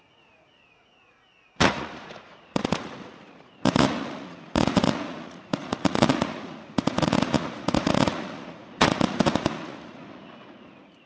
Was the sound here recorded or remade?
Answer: remade